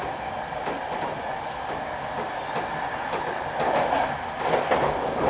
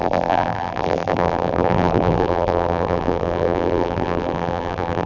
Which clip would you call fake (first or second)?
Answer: second